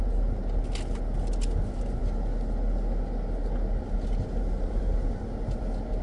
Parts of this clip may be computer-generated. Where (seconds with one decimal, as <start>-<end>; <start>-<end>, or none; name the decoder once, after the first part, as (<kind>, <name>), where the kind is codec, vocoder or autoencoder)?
none